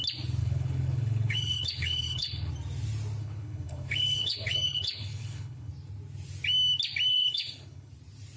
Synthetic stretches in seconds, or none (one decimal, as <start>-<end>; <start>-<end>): 0.4-2.5; 3.2-5.7; 7.1-7.9